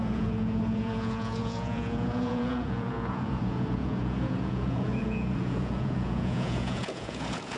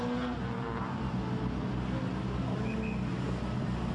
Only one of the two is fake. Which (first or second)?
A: first